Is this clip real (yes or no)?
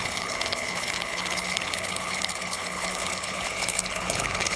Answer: no